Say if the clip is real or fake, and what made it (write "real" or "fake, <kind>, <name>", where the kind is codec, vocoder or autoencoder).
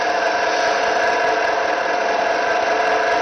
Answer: real